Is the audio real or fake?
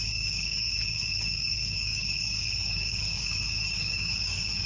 fake